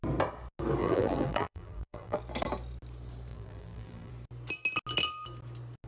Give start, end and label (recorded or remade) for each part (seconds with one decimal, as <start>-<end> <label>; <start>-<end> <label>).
0.0-0.8 recorded; 0.8-2.2 remade; 2.2-3.3 recorded; 3.3-4.1 remade; 4.1-5.9 recorded